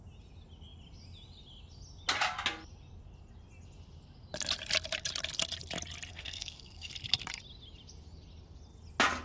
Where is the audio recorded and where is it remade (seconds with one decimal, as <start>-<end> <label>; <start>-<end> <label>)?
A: 0.0-6.1 recorded; 6.1-6.9 remade; 6.9-9.2 recorded